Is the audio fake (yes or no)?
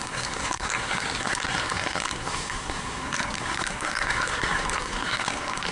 yes